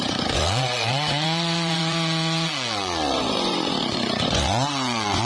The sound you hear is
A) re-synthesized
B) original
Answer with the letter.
A